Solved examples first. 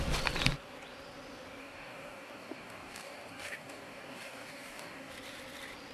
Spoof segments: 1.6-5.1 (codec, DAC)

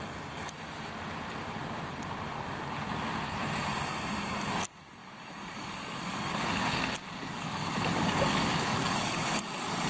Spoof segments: 5.0-9.9 (codec, DAC)

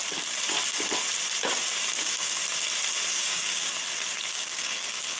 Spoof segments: 2.0-2.4 (codec, DAC); 3.1-3.7; 4.3-5.2

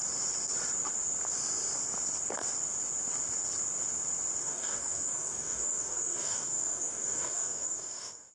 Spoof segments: 4.4-8.3 (codec, DAC)